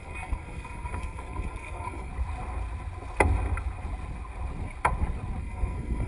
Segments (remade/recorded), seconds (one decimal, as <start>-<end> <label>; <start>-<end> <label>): 0.0-2.1 remade; 2.1-5.4 recorded; 5.4-6.1 remade